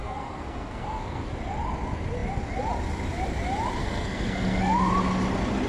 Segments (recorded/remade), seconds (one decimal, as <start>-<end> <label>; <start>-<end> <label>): 0.0-1.3 remade; 1.3-3.8 recorded; 3.8-4.9 remade; 4.9-5.7 recorded